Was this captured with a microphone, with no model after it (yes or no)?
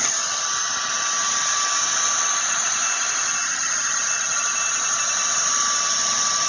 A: yes